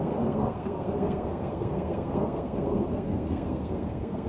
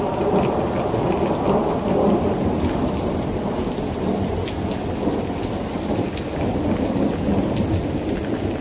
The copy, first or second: first